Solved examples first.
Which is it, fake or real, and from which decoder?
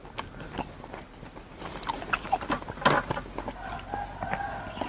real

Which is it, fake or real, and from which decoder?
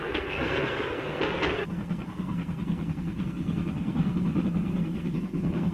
fake, codec, SNAC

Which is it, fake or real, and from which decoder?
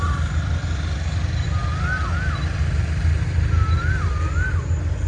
real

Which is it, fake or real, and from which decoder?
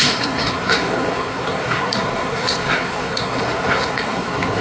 fake, codec, SNAC